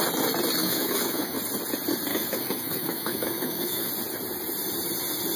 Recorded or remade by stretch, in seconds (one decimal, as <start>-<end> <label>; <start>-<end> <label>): 0.0-0.6 recorded; 0.6-1.4 remade; 1.4-2.1 recorded; 2.1-3.9 remade; 3.9-5.4 recorded